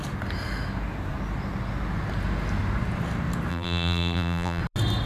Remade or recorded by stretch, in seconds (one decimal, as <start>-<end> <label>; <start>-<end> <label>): 0.0-3.5 recorded; 3.5-4.6 remade; 4.6-5.1 recorded